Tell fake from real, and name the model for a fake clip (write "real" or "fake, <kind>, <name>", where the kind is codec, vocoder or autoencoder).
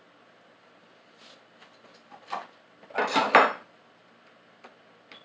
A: real